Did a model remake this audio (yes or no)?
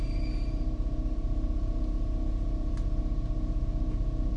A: yes